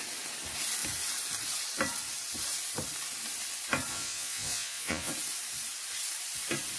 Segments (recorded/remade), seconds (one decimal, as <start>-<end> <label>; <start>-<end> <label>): 0.0-3.9 recorded; 3.9-5.1 remade; 5.1-6.8 recorded